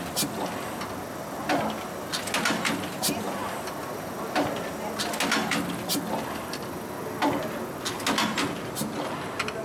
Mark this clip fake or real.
real